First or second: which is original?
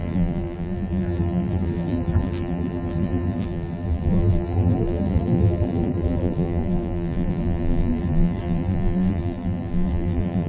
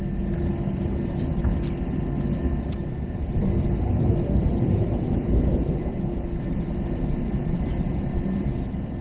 second